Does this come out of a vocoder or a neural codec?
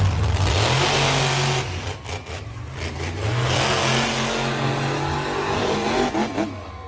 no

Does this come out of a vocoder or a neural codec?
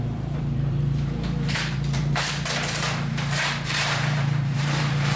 yes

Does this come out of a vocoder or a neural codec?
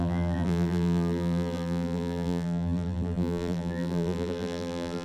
yes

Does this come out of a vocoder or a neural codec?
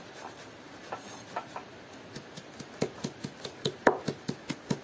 no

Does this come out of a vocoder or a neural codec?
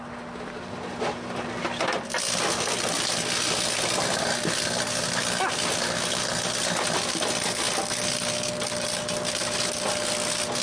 no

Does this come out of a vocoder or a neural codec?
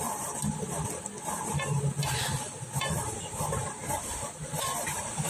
no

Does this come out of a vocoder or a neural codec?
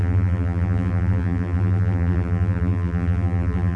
yes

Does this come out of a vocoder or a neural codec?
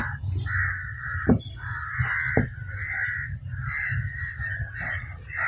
no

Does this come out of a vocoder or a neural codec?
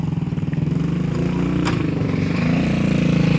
no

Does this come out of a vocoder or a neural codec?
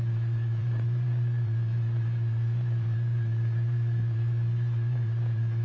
yes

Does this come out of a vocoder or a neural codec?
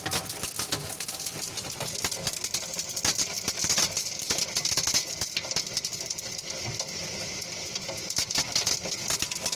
no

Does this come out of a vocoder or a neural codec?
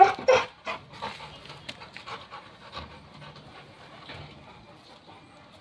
no